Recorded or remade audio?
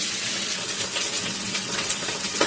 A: remade